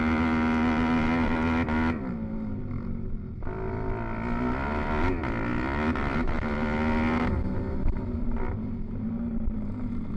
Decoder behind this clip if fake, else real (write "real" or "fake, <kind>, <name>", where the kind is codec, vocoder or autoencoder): real